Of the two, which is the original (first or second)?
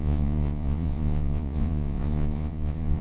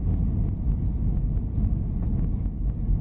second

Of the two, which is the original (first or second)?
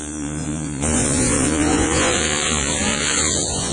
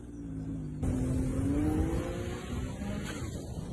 second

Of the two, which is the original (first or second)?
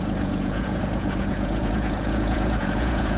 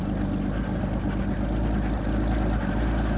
second